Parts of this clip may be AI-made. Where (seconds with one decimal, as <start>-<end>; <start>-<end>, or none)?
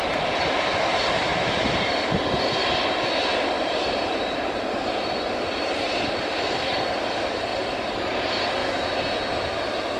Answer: 0.0-8.6; 9.5-10.0